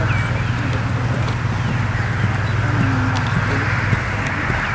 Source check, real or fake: real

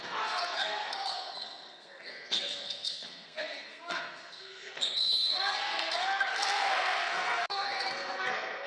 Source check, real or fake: fake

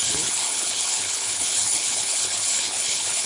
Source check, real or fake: fake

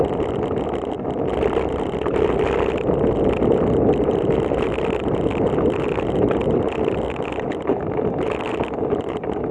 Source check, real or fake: real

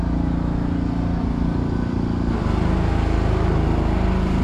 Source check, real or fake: real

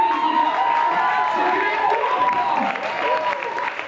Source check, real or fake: real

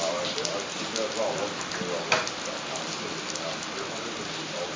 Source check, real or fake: real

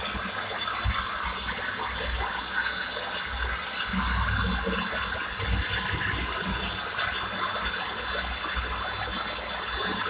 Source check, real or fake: real